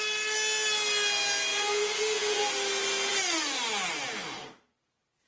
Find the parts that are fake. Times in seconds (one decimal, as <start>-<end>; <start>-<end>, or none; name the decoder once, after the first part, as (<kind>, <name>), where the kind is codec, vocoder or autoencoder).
1.5-2.5 (vocoder, Vocos)

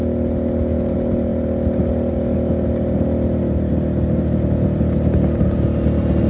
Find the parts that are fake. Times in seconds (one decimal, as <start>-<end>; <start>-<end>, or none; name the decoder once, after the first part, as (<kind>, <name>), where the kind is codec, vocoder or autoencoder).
none

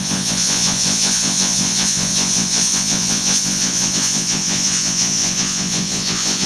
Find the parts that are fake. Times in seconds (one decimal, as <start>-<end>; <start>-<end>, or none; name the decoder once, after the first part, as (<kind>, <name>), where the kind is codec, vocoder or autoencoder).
0.0-6.5 (vocoder, Vocos)

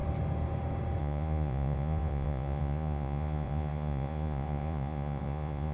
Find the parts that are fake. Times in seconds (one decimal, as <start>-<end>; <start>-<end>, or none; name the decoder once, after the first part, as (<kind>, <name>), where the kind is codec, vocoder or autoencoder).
1.0-5.7 (vocoder, Vocos)